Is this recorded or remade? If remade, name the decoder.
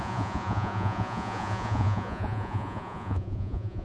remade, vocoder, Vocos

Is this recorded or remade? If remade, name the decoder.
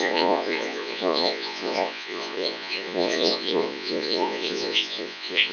remade, vocoder, Vocos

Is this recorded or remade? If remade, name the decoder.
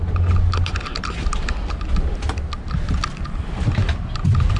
recorded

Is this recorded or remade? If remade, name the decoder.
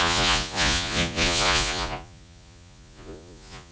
remade, vocoder, Vocos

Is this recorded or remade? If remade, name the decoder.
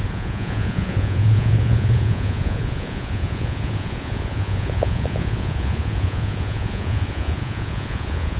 remade, vocoder, Vocos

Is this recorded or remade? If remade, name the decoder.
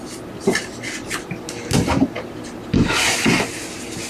recorded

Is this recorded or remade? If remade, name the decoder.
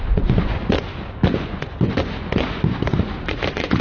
remade, vocoder, Vocos